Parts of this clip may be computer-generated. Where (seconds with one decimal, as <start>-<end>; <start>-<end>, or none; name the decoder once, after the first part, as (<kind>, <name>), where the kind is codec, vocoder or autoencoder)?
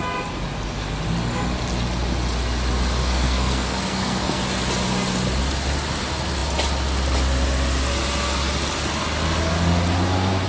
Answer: 3.0-4.4 (codec, SNAC)